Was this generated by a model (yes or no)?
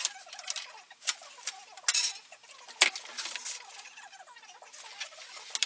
no